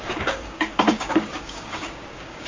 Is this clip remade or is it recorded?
remade